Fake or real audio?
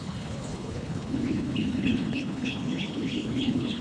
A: fake